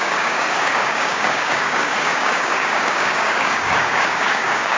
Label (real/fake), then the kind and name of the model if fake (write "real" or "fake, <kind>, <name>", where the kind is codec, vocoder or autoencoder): fake, codec, DAC